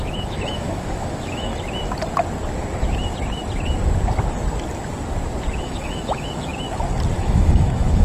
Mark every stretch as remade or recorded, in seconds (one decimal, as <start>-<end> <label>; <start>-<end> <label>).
0.0-1.5 remade; 1.5-5.6 recorded; 5.6-6.5 remade; 6.5-7.2 recorded; 7.2-8.0 remade